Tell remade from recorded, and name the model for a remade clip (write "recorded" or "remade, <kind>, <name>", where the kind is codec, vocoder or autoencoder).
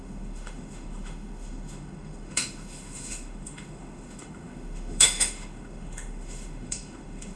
remade, autoencoder, DAC-VAE